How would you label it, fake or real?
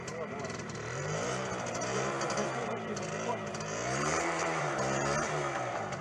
fake